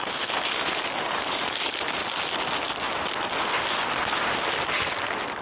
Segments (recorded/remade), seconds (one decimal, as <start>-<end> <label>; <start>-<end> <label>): 0.0-2.0 remade; 2.0-5.4 recorded